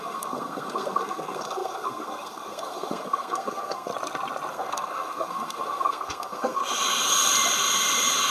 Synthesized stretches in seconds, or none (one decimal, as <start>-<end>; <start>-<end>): 0.0-3.9; 4.5-6.6